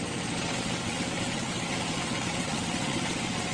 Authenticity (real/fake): fake